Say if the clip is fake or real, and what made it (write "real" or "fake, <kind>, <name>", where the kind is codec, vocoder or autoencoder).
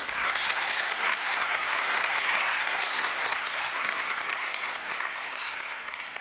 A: fake, codec, SNAC